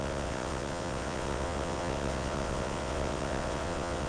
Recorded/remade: remade